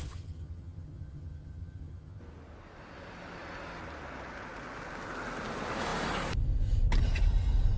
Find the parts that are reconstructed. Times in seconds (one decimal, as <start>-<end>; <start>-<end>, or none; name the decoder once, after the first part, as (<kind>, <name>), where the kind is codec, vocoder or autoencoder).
0.0-2.2 (vocoder, HiFi-GAN)